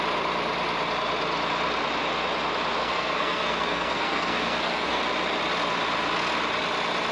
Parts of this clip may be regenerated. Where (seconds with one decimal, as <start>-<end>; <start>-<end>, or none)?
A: 2.8-5.0